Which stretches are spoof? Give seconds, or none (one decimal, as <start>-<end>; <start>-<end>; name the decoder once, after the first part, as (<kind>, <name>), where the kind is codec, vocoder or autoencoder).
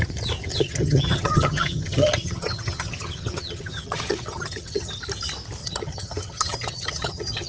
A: 0.5-5.0 (vocoder, HiFi-GAN); 5.6-7.5